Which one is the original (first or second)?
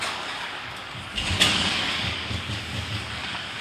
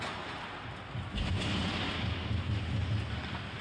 second